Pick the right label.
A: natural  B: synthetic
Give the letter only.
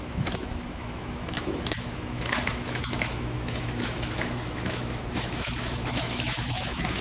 B